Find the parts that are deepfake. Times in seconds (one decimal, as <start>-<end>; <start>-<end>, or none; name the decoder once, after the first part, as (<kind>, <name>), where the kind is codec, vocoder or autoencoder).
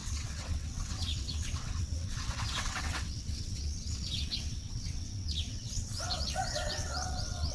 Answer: 0.0-7.5 (vocoder, WaveNeXt)